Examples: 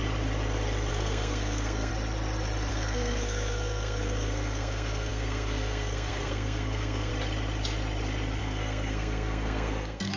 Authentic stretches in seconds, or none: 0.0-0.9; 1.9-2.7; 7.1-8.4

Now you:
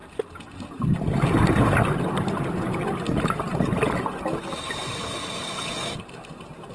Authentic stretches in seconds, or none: 0.0-6.7

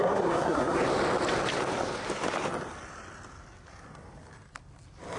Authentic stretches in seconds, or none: 0.8-5.2

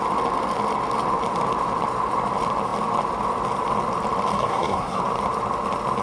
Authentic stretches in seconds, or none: 0.0-4.3; 5.0-6.0